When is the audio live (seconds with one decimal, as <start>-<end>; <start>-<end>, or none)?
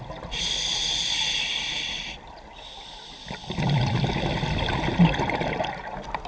0.0-1.7; 4.1-6.3